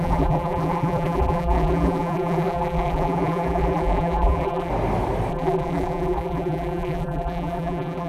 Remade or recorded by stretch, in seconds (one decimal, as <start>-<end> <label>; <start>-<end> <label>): 0.0-4.7 remade; 4.7-5.3 recorded; 5.3-8.1 remade